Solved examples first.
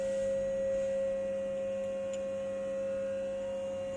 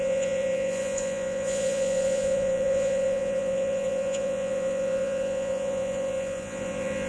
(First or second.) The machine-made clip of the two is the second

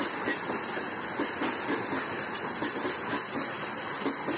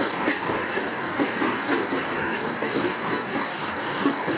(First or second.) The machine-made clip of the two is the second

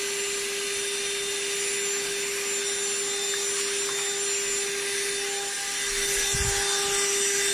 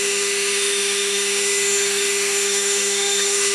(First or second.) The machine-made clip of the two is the second